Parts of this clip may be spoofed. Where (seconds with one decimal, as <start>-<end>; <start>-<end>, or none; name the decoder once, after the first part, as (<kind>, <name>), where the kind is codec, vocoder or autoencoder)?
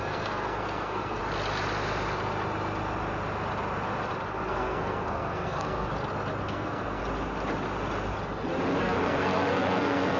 0.0-1.2 (codec, SNAC); 4.5-5.9; 6.4-7.0; 8.8-10.2